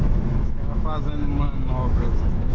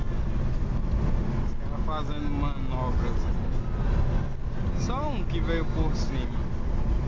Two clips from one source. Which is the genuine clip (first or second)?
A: second